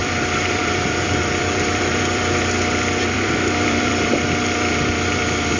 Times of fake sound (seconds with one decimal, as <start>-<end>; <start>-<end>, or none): 0.0-5.6